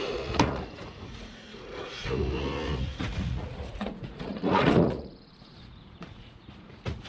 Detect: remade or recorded remade